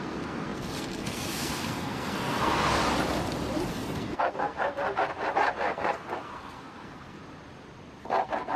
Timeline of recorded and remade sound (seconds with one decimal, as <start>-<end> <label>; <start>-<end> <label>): 0.0-2.8 remade; 2.8-3.7 recorded; 3.7-4.8 remade; 4.8-5.6 recorded; 5.6-7.2 remade; 7.2-8.0 recorded; 8.0-8.6 remade